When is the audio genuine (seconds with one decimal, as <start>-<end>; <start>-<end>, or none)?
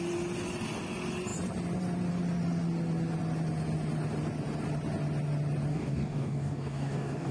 0.0-5.7